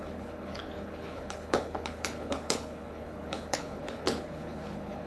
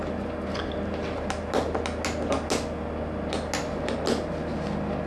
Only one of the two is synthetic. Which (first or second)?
first